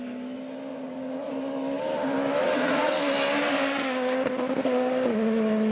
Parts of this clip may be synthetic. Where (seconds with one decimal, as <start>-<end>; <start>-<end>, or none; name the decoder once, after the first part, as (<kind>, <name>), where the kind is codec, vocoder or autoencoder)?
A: 0.7-1.3 (vocoder, Vocos); 2.4-2.9